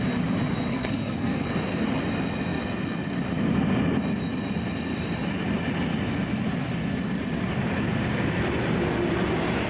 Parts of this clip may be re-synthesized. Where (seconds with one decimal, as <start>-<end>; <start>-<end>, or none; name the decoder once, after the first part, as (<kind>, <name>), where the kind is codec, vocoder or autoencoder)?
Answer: 0.7-1.6 (codec, SNAC)